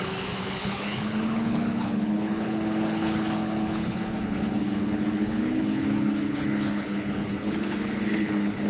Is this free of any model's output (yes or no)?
no